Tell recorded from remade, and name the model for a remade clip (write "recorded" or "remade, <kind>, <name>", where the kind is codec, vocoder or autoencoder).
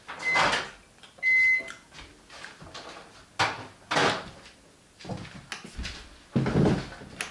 recorded